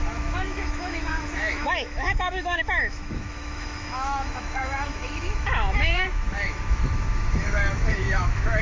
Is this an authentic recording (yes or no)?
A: no